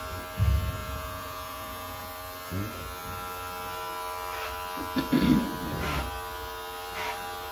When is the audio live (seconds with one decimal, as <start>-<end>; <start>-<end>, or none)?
0.0-0.8; 2.1-7.5